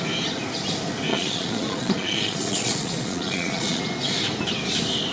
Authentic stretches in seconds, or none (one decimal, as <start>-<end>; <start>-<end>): 0.0-1.1; 3.8-5.1